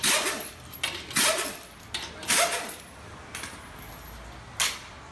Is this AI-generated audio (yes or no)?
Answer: no